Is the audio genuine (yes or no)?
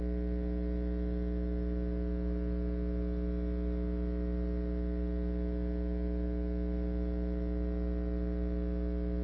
yes